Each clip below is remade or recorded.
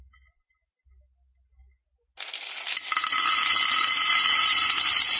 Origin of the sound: recorded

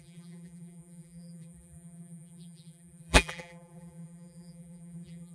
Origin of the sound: remade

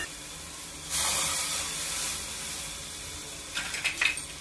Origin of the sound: remade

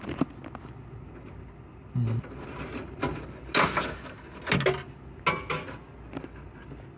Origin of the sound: recorded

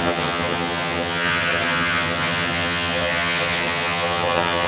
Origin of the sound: remade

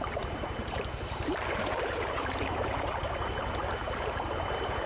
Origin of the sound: remade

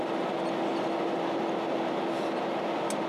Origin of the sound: recorded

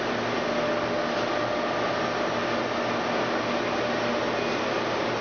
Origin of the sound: recorded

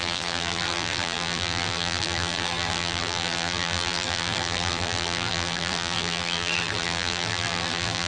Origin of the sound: remade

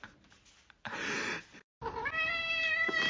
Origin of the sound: recorded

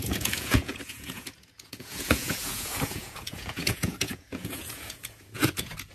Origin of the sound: remade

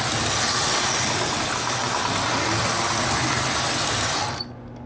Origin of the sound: recorded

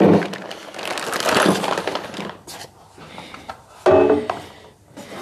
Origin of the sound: recorded